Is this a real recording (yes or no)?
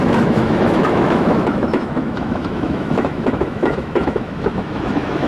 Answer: no